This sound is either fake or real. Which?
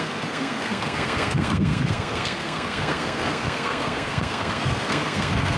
fake